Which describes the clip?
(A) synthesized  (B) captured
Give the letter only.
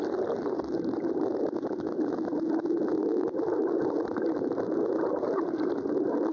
A